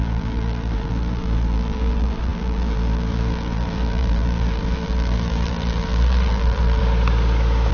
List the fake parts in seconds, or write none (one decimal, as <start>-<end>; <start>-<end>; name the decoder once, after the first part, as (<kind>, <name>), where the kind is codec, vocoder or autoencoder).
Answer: 0.0-6.8 (vocoder, BigVGAN v2)